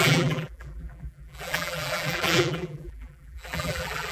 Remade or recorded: remade